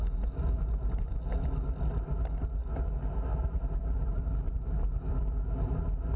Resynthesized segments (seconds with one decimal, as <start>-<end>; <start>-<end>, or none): none